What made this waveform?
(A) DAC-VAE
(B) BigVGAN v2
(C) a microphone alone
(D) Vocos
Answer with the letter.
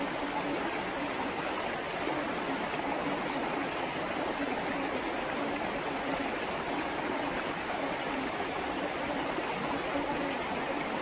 C